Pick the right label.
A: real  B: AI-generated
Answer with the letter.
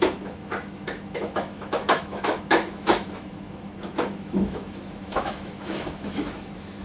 B